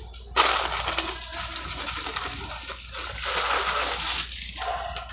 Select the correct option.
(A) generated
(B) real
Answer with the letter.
B